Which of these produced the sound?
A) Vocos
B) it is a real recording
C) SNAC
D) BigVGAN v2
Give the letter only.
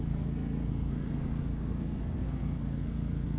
C